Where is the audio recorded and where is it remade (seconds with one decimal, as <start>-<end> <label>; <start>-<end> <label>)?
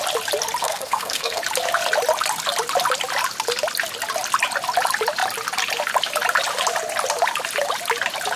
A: 0.0-0.6 recorded; 0.6-1.4 remade; 1.4-8.4 recorded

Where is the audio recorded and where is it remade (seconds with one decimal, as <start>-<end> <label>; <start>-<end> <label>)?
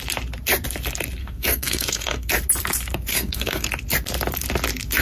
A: 0.0-1.2 recorded; 1.2-2.3 remade; 2.3-3.1 recorded; 3.1-3.7 remade; 3.7-5.0 recorded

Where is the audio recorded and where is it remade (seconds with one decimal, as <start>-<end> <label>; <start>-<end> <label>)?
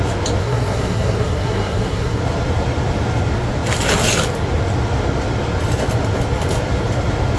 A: 0.0-0.4 recorded; 0.4-2.2 remade; 2.2-7.4 recorded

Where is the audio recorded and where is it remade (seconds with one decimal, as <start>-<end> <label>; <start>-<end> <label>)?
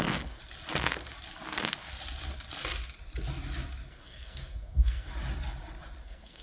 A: 0.0-0.4 remade; 0.4-3.9 recorded; 3.9-5.1 remade; 5.1-6.0 recorded; 6.0-6.4 remade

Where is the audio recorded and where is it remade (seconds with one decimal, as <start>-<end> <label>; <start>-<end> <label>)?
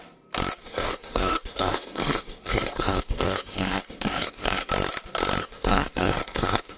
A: 0.0-0.6 recorded; 0.6-4.7 remade; 4.7-5.4 recorded; 5.4-6.8 remade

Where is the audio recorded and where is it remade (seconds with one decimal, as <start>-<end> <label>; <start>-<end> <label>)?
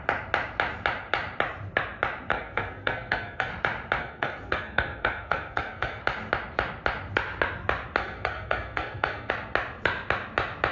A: 0.0-2.3 recorded; 2.3-3.5 remade; 3.5-4.0 recorded; 4.0-6.0 remade; 6.0-8.0 recorded; 8.0-9.3 remade; 9.3-10.7 recorded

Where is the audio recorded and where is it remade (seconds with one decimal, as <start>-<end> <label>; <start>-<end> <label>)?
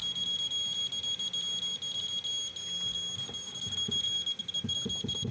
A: 0.0-5.3 recorded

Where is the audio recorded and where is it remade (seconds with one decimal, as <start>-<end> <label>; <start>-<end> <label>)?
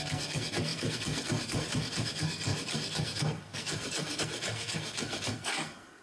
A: 0.0-6.0 remade